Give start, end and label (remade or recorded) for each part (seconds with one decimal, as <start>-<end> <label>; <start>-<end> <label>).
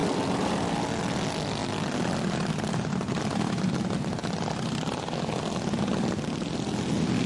0.0-0.8 remade; 0.8-4.2 recorded; 4.2-5.0 remade; 5.0-7.3 recorded